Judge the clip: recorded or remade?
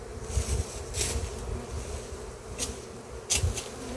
recorded